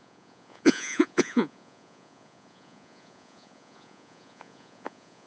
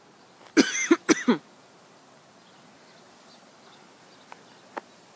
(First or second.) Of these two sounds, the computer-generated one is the first